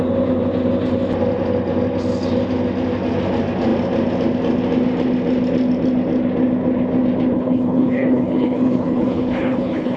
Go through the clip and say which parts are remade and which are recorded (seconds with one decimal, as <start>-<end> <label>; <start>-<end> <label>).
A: 0.0-7.3 recorded; 7.3-10.0 remade